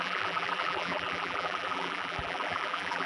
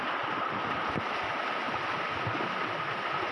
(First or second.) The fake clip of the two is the first